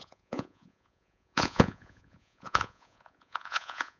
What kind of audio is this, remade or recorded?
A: remade